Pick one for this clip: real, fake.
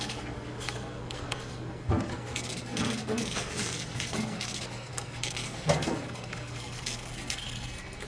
fake